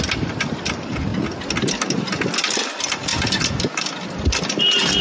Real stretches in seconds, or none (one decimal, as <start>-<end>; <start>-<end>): 1.1-2.3; 3.1-3.8